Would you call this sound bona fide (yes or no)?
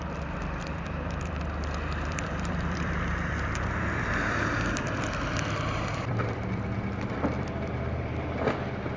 no